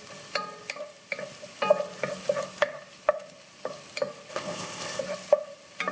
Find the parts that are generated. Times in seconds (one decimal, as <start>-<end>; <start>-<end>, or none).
4.3-5.0